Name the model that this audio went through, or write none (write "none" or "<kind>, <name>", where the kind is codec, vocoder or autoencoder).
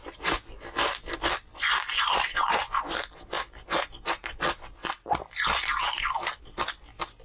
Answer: none